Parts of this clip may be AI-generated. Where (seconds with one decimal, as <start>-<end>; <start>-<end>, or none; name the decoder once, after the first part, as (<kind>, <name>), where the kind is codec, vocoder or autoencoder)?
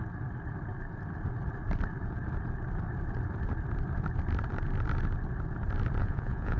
6.0-6.6 (vocoder, Vocos)